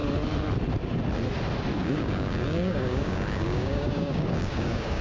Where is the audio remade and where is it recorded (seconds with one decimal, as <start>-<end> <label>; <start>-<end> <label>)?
0.0-1.7 recorded; 1.7-5.0 remade